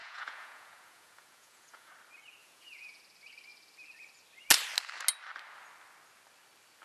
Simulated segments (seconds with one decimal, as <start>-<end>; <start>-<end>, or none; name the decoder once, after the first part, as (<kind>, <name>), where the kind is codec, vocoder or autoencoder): 0.0-1.9 (vocoder, Vocos); 2.4-3.0